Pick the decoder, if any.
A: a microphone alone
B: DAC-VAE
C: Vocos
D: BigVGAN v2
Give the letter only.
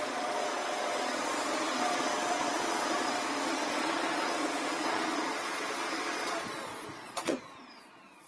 C